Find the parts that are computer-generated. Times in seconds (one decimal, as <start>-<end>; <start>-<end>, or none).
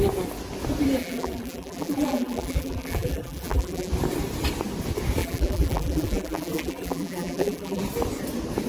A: 1.0-3.9; 5.2-7.8